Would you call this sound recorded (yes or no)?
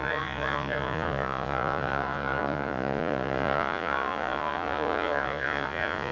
no